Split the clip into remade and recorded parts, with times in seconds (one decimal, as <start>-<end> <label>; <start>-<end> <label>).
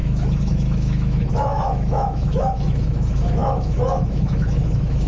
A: 0.0-5.1 remade